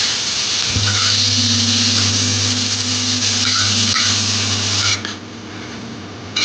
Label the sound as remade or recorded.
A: recorded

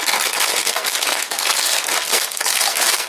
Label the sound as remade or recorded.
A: remade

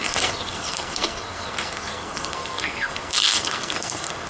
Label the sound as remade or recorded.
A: remade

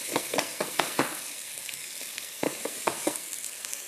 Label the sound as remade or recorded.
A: remade